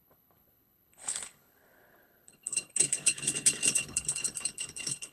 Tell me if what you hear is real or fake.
fake